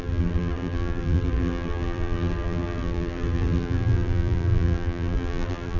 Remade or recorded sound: remade